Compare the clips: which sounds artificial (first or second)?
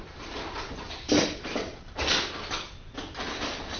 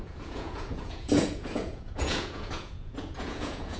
second